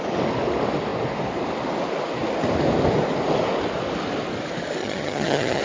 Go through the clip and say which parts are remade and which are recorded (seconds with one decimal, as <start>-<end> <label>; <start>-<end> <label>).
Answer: 0.0-4.8 recorded; 4.8-5.6 remade